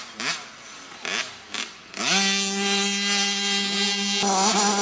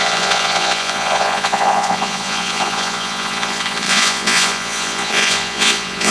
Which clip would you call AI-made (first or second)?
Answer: second